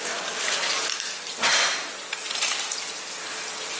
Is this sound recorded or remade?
recorded